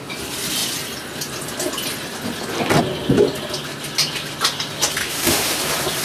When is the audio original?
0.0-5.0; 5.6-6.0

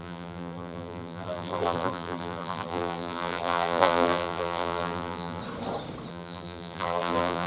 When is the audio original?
5.4-6.1

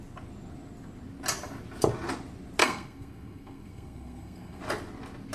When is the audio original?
0.0-2.6; 4.6-5.3

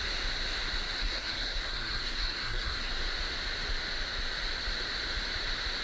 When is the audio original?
0.0-1.0; 2.9-5.8

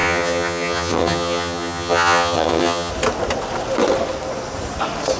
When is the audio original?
2.9-5.2

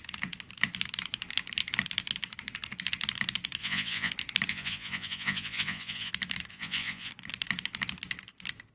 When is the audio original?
0.0-3.6; 4.1-4.5; 6.1-6.5; 7.1-8.7

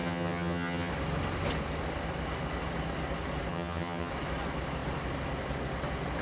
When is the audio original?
0.9-3.5; 4.1-6.2